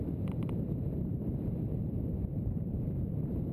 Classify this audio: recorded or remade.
remade